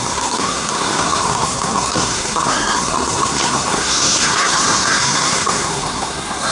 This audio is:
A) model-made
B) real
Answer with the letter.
A